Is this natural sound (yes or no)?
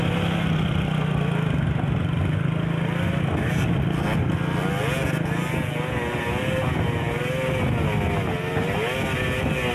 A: yes